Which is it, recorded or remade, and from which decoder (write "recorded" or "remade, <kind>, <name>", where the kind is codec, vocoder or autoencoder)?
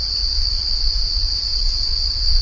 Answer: recorded